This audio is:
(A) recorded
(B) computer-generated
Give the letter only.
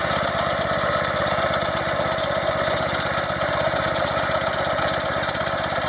A